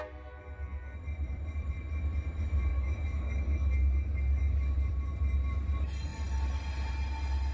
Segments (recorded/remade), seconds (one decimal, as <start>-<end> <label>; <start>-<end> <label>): 0.0-2.7 recorded; 2.7-4.9 remade; 4.9-7.5 recorded